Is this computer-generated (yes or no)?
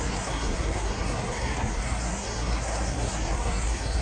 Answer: yes